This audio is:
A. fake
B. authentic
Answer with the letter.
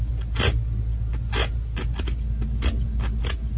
B